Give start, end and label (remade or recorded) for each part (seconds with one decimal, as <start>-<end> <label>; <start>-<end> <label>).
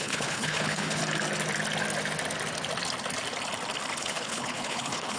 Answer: 0.0-1.0 remade; 1.0-4.0 recorded; 4.0-5.2 remade